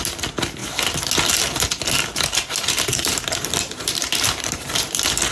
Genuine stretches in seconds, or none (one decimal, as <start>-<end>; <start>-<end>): 0.0-2.9; 4.7-5.3